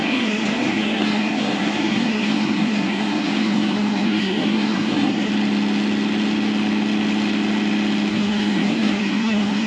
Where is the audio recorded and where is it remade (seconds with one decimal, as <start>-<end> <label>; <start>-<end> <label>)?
0.0-5.3 remade; 5.3-8.1 recorded; 8.1-9.7 remade